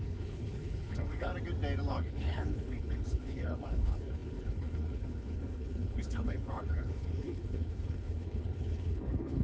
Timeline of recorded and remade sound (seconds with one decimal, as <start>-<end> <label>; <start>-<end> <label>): 0.0-1.3 remade; 1.3-1.9 recorded; 1.9-9.4 remade

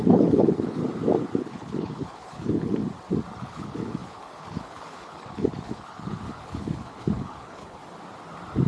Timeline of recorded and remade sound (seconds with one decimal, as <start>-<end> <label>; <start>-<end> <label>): 0.0-0.8 remade; 0.8-1.4 recorded; 1.4-2.8 remade; 2.8-3.4 recorded; 3.4-7.8 remade; 7.8-8.7 recorded

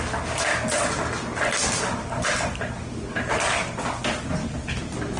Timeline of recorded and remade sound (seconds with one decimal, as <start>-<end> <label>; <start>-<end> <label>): 0.0-5.2 recorded

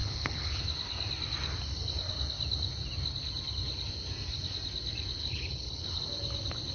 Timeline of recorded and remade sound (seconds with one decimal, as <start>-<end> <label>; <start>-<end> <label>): 0.0-0.6 remade; 0.6-5.2 recorded; 5.2-6.0 remade; 6.0-6.7 recorded

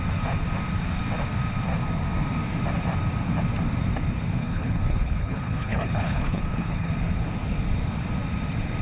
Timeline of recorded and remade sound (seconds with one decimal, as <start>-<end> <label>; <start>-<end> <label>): 0.0-4.4 recorded; 4.4-6.9 remade; 6.9-8.8 recorded

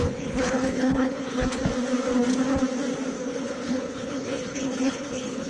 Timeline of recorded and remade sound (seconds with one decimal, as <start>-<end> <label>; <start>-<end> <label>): 0.0-1.6 remade; 1.6-3.3 recorded; 3.3-5.5 remade

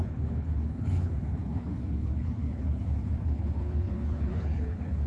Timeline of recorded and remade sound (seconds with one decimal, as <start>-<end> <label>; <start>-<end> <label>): 0.0-5.1 remade

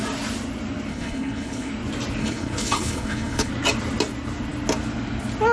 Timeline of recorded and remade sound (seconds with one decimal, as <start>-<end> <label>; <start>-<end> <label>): 0.0-0.9 recorded; 0.9-1.7 remade; 1.7-2.2 recorded; 2.2-3.5 remade; 3.5-5.5 recorded